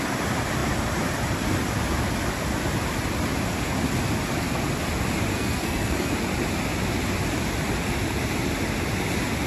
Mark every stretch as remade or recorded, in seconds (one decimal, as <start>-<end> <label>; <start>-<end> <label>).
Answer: 0.0-5.3 recorded; 5.3-6.1 remade; 6.1-9.5 recorded